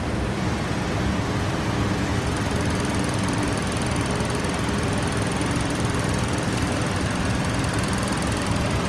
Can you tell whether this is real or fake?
fake